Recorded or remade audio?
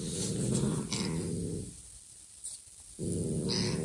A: recorded